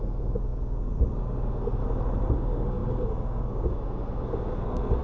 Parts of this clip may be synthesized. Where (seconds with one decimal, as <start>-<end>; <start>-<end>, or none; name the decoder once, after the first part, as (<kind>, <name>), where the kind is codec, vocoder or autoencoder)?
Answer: 0.0-1.8 (codec, SNAC); 2.3-5.0